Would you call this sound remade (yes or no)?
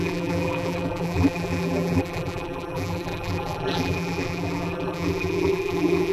yes